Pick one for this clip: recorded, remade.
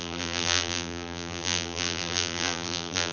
remade